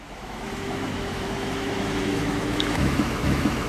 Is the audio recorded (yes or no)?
no